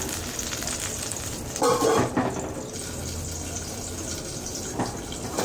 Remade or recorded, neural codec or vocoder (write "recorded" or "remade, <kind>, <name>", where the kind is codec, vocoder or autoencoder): recorded